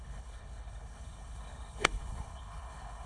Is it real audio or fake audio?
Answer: fake